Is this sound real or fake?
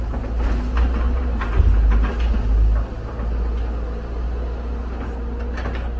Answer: real